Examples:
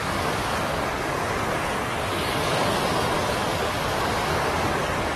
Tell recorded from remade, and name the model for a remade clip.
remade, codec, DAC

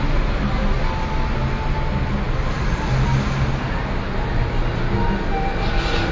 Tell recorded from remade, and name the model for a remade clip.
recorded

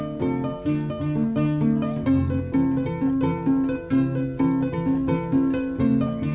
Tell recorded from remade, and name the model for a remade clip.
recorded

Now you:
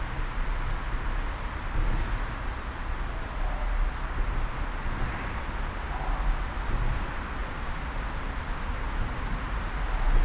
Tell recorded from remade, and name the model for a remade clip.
recorded